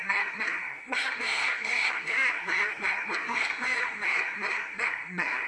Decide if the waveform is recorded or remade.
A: remade